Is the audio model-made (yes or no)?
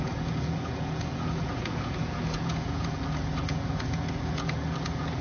yes